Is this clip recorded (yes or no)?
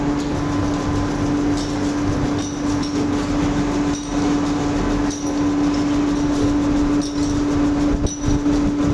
yes